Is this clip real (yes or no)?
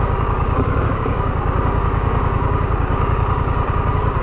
no